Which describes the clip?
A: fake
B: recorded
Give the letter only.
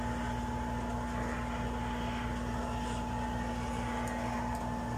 B